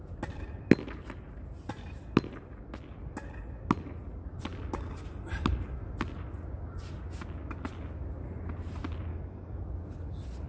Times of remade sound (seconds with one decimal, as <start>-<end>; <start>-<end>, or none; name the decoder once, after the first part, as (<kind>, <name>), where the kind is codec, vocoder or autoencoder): 9.1-9.6 (codec, DAC)